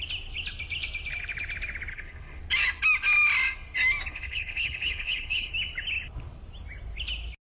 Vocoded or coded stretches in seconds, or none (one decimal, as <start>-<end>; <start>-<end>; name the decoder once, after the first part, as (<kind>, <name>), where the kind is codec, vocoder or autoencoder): 1.9-2.4 (codec, HILCodec); 4.1-5.5